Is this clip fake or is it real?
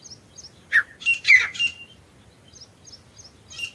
real